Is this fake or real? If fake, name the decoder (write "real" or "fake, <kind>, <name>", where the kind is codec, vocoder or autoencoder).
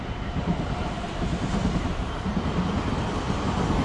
fake, vocoder, BigVGAN v2